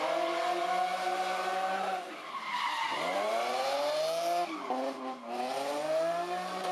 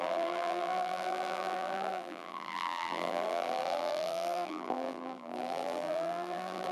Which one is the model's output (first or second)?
second